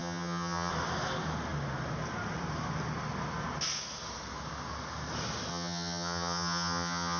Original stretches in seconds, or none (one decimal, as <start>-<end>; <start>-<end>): 0.7-5.5